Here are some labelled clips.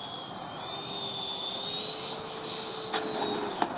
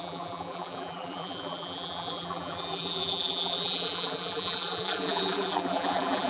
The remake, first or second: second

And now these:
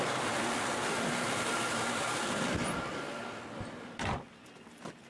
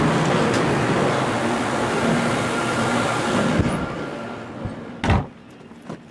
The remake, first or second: first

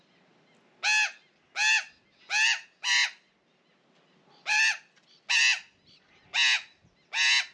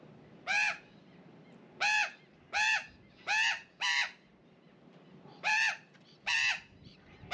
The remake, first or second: second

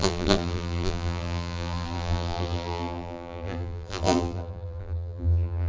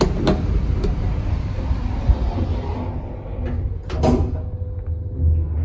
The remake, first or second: first